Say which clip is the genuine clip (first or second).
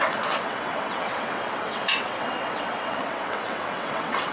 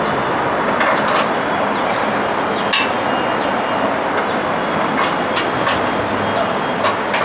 second